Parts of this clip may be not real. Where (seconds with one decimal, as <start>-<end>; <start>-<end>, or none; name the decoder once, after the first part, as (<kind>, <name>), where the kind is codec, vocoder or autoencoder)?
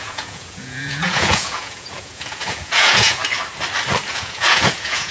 0.0-3.2 (vocoder, Vocos); 4.1-5.1